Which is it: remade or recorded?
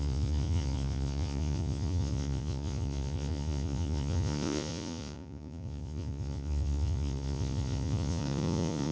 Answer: remade